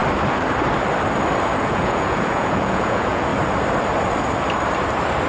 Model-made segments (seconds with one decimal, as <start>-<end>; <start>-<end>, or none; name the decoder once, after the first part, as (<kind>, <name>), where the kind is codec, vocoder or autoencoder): 1.6-3.3 (vocoder, Vocos)